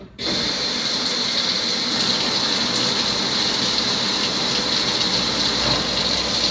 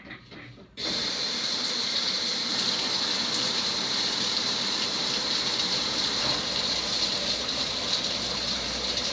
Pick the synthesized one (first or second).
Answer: second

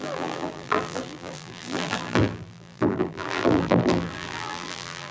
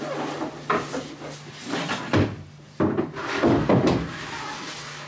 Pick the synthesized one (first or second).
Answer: first